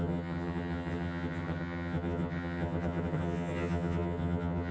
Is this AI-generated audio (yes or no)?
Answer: yes